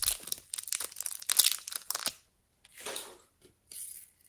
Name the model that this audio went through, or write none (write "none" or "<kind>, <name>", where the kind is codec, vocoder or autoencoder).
none